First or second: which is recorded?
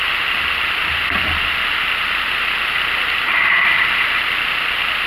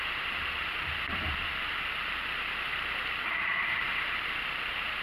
first